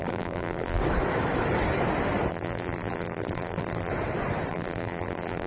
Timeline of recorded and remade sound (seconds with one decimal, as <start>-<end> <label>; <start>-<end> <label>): 0.0-0.8 remade; 0.8-2.3 recorded; 2.3-3.9 remade; 3.9-4.5 recorded; 4.5-5.5 remade